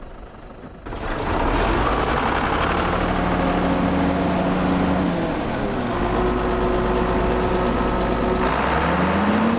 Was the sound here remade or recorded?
recorded